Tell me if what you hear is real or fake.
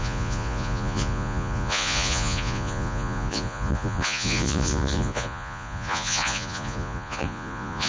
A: fake